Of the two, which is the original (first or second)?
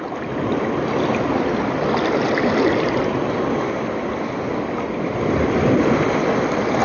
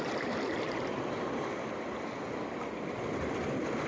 first